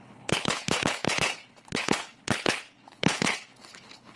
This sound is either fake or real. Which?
fake